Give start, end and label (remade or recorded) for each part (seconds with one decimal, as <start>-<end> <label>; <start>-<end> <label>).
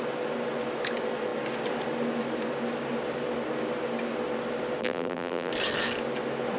0.0-4.8 recorded; 4.8-5.5 remade; 5.5-6.6 recorded